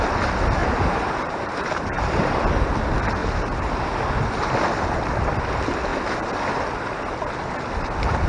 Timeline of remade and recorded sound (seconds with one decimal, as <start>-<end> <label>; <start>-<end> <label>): 0.0-0.6 recorded; 0.6-2.4 remade; 2.4-3.2 recorded; 3.2-4.1 remade; 4.1-8.3 recorded